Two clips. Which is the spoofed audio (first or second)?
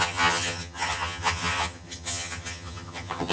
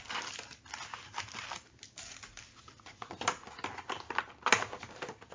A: first